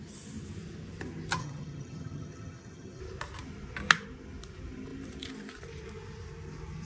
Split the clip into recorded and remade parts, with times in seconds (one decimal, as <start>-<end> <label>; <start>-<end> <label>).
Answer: 0.0-1.4 recorded; 1.4-3.0 remade; 3.0-6.9 recorded

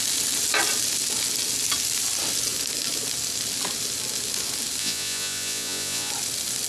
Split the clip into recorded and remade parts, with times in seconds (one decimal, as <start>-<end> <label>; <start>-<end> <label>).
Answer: 0.0-4.8 recorded; 4.8-6.1 remade; 6.1-6.7 recorded

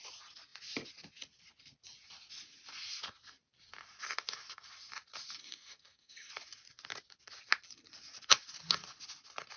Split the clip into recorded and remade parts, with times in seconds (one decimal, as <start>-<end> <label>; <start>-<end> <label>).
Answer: 0.0-5.4 recorded; 5.4-6.3 remade; 6.3-9.6 recorded